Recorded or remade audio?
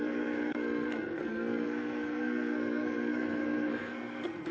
remade